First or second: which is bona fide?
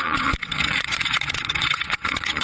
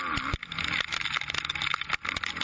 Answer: second